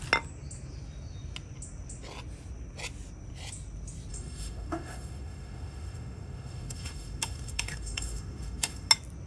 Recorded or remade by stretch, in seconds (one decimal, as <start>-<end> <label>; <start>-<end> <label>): 0.0-4.1 recorded; 4.1-8.9 remade; 8.9-9.3 recorded